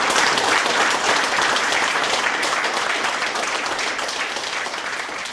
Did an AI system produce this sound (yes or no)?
no